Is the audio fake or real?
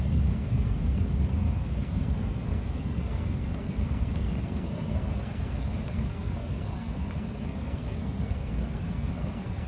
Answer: fake